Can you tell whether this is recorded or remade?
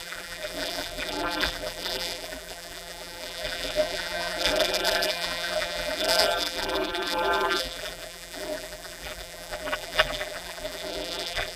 remade